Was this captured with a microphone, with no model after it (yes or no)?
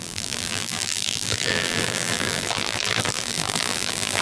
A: no